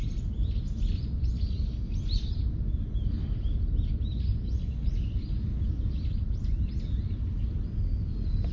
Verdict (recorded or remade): recorded